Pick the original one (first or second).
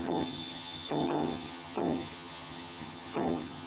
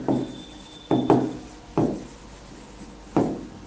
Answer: second